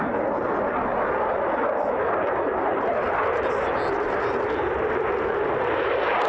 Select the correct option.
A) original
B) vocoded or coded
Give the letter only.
A